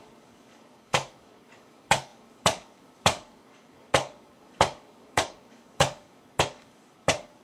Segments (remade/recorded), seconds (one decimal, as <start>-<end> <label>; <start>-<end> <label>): 0.0-7.4 remade